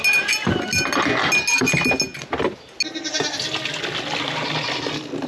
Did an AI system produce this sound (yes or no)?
no